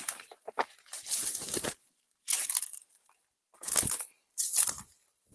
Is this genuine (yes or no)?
no